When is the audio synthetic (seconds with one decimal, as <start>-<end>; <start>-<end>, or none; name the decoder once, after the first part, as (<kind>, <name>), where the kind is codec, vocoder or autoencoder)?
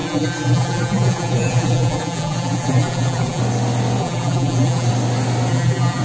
0.0-3.4 (vocoder, BigVGAN v2); 4.0-4.9; 5.5-6.0